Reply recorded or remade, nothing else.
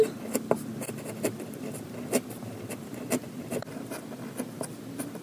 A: recorded